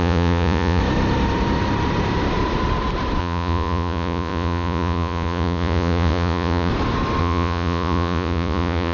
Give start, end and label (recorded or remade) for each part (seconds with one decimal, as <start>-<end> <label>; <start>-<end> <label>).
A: 0.0-0.8 remade; 0.8-3.2 recorded; 3.2-6.7 remade; 6.7-7.2 recorded; 7.2-8.9 remade